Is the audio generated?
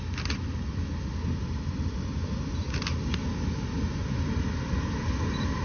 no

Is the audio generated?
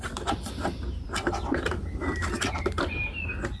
no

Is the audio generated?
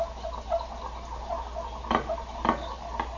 no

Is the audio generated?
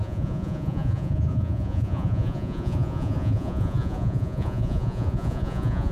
yes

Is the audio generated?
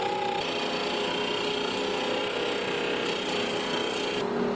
no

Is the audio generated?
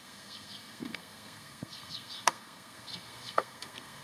yes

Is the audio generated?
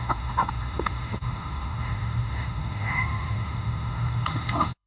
yes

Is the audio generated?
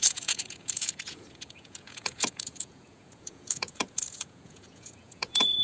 yes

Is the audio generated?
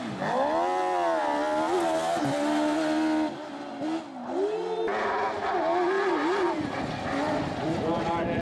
no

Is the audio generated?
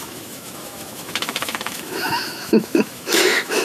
yes